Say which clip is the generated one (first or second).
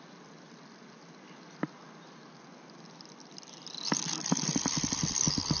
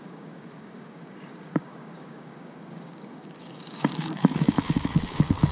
second